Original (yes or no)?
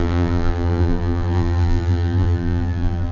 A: no